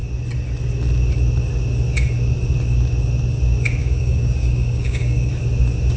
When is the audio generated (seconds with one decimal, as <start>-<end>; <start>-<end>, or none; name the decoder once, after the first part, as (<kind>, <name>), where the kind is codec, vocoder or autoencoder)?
3.8-5.3 (codec, DAC)